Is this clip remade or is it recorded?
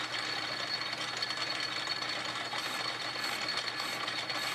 recorded